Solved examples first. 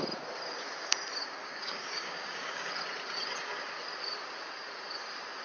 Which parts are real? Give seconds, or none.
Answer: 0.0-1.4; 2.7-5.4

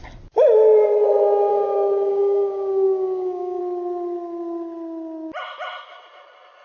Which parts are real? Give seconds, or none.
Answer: 0.0-1.5; 3.6-6.6